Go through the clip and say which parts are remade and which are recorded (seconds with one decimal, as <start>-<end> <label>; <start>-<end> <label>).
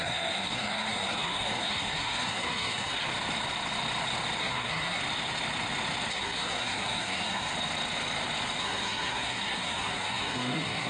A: 0.0-3.0 remade; 3.0-4.4 recorded; 4.4-5.0 remade; 5.0-6.1 recorded; 6.1-7.5 remade; 7.5-8.6 recorded; 8.6-10.9 remade